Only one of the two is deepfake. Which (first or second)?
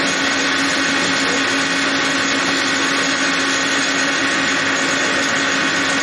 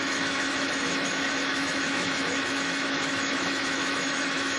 second